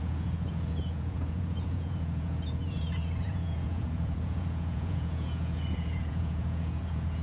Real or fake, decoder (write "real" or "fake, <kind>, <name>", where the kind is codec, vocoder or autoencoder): fake, vocoder, Vocos